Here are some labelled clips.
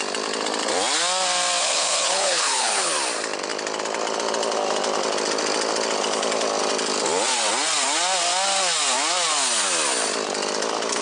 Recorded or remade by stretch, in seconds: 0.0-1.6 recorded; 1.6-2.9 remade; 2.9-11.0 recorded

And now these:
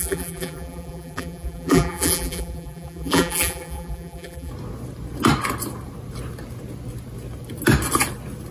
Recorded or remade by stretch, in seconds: 0.0-4.5 remade; 4.5-8.5 recorded

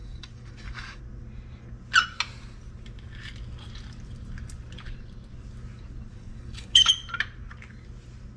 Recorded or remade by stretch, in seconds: 0.0-1.0 remade; 1.0-6.1 recorded; 6.1-6.9 remade; 6.9-8.4 recorded

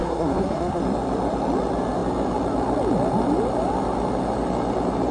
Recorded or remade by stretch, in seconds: 0.0-0.8 remade; 0.8-5.1 recorded